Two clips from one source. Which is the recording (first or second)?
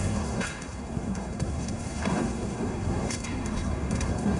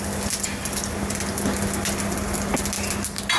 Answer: second